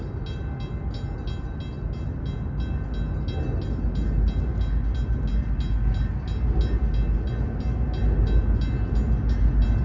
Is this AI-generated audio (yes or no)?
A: no